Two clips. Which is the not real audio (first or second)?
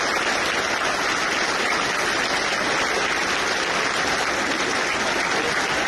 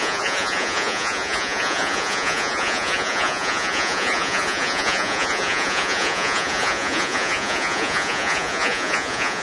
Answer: second